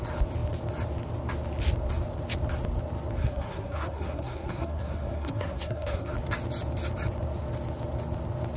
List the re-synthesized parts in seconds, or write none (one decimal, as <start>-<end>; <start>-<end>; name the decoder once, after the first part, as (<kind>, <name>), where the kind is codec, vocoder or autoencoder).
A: 3.2-6.1 (codec, SNAC)